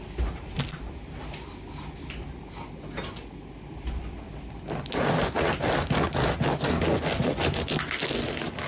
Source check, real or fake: real